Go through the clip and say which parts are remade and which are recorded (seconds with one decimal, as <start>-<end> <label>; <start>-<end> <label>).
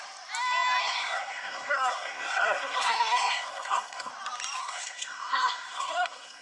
0.0-0.8 recorded; 0.8-4.1 remade; 4.1-4.6 recorded; 4.6-6.4 remade